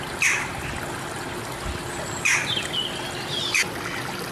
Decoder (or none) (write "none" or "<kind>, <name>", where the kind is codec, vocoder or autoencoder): none